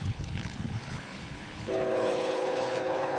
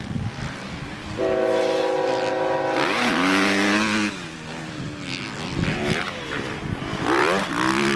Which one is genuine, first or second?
second